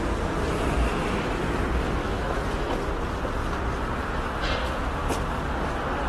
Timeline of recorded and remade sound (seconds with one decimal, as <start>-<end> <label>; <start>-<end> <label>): 0.0-2.0 recorded; 2.0-2.7 remade; 2.7-6.1 recorded

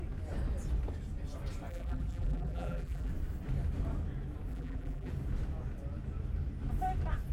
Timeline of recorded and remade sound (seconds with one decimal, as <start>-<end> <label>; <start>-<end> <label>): 0.0-1.7 recorded; 1.7-3.1 remade; 3.1-4.5 recorded; 4.5-5.1 remade; 5.1-7.3 recorded

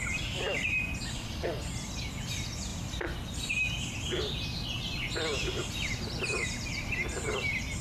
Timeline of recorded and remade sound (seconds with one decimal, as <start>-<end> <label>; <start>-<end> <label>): 0.0-7.8 recorded

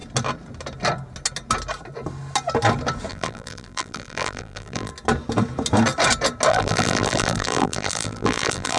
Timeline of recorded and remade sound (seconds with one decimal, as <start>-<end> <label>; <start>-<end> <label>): 0.0-3.1 recorded; 3.1-4.9 remade; 4.9-6.5 recorded; 6.5-8.8 remade

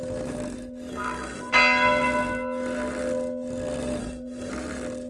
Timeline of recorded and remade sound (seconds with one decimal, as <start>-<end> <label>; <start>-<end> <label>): 0.0-0.9 recorded; 0.9-1.5 remade; 1.5-4.0 recorded; 4.0-4.5 remade; 4.5-5.1 recorded

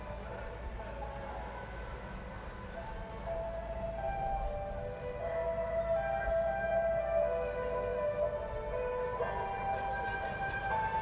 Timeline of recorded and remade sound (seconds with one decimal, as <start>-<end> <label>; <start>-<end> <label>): 0.0-11.0 recorded